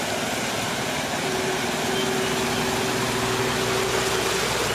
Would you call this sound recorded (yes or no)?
yes